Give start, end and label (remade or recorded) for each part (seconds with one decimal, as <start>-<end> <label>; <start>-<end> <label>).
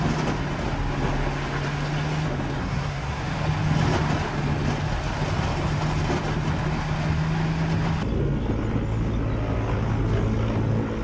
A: 0.0-2.6 recorded; 2.6-3.2 remade; 3.2-11.0 recorded